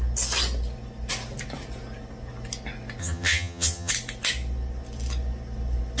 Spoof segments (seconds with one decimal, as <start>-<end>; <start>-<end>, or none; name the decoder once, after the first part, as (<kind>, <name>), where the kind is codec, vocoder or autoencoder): 3.0-3.9 (vocoder, HiFi-GAN)